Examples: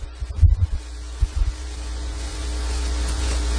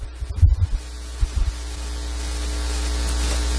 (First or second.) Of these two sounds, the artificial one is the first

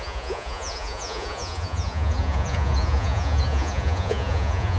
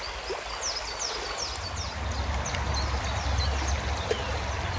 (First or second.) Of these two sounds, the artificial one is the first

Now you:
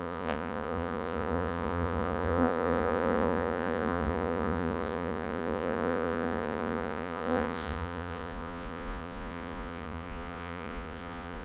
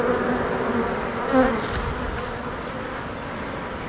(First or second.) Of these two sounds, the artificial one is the first